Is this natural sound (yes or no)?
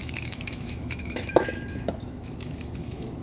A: no